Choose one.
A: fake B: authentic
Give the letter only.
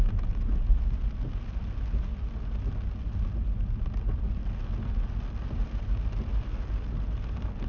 B